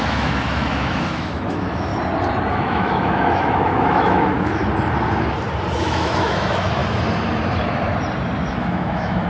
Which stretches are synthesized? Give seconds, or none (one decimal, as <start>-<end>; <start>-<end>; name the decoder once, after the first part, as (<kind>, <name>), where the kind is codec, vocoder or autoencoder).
0.0-1.9 (autoencoder, DAC-VAE); 2.5-4.6; 5.8-6.8; 8.5-9.3